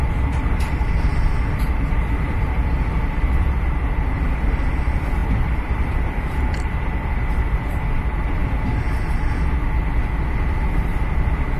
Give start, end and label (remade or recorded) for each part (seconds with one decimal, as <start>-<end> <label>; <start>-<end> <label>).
0.0-8.4 remade; 8.4-10.0 recorded; 10.0-10.9 remade; 10.9-11.6 recorded